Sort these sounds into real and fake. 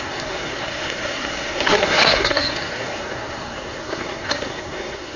fake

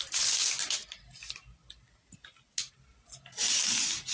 real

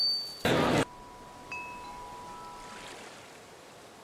real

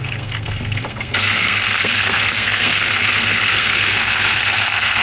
fake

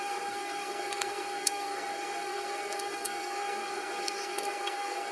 fake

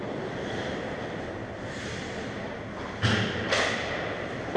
real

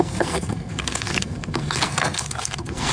fake